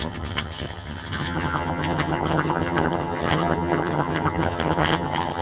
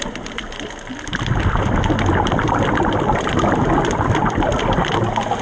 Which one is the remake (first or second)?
first